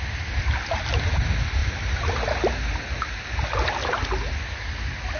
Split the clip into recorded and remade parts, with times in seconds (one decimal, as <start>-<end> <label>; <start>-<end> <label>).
0.0-5.2 recorded